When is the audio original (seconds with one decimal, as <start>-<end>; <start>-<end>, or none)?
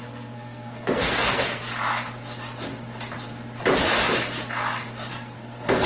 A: 1.6-5.1